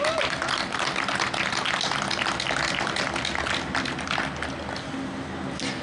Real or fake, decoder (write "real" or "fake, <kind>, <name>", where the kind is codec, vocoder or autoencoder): real